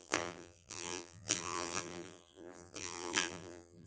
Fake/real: fake